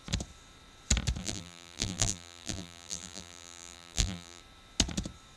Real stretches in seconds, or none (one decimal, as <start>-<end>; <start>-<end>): 0.0-1.2; 4.4-5.4